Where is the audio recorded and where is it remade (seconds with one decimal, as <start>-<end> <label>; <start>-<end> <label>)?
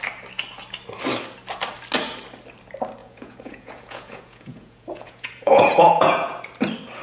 0.0-3.0 recorded; 3.0-6.4 remade; 6.4-7.0 recorded